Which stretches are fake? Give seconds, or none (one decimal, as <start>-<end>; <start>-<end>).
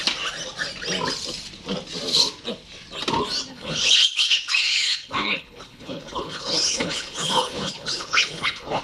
3.5-8.8